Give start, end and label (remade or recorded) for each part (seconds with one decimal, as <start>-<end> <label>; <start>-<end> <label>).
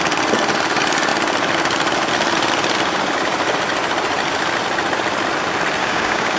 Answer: 0.0-5.8 recorded; 5.8-6.4 remade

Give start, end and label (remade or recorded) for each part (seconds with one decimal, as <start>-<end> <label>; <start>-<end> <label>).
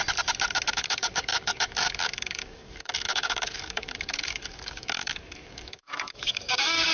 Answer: 0.0-0.7 recorded; 0.7-6.9 remade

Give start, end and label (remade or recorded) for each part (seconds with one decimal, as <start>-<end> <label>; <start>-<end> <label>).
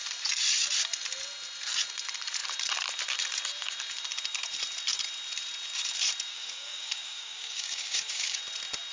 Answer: 0.0-6.3 recorded; 6.3-8.4 remade; 8.4-8.9 recorded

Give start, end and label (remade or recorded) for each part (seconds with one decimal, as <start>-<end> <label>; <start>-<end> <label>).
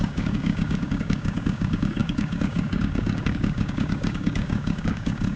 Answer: 0.0-5.4 remade